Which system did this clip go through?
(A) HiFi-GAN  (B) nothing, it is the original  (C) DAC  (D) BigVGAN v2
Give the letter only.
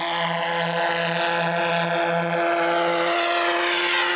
B